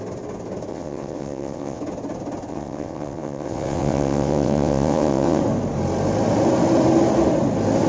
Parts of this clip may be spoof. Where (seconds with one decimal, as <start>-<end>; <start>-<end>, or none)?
0.7-1.8; 2.5-5.4